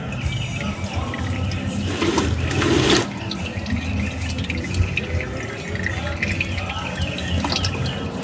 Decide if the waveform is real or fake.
real